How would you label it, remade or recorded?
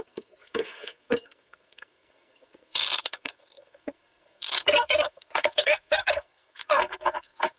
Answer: remade